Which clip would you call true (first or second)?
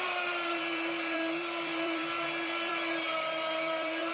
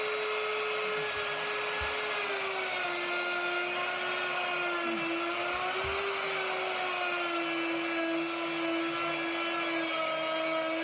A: second